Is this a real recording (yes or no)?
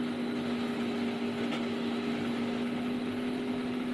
yes